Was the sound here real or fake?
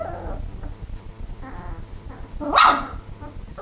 real